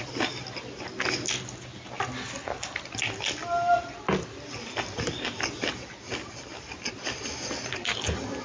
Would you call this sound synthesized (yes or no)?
no